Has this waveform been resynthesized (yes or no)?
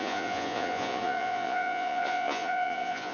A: yes